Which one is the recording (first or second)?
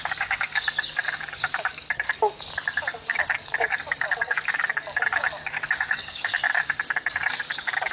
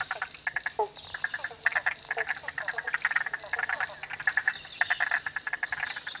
second